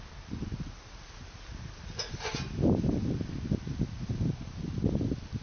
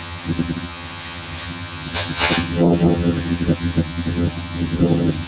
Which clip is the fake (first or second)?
second